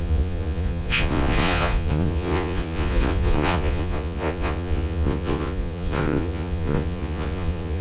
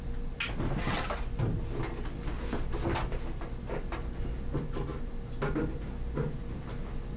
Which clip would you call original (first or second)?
second